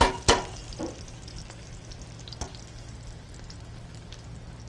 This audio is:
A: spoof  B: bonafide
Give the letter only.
B